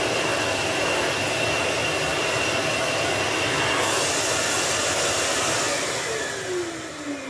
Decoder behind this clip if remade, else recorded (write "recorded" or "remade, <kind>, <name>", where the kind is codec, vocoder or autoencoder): recorded